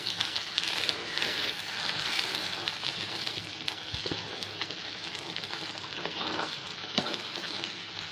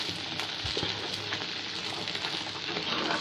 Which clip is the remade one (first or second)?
first